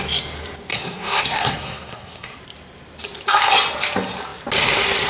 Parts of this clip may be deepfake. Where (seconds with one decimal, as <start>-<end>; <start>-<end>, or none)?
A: 0.7-2.4